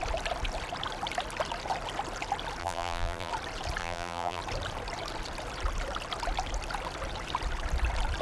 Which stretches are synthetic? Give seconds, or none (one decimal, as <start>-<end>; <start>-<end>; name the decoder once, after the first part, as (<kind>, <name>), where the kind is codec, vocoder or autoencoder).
2.6-3.3 (vocoder, BigVGAN v2); 3.8-4.4